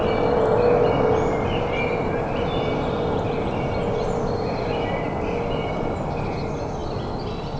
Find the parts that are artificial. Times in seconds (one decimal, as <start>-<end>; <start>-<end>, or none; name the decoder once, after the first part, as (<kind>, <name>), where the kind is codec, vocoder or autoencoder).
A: none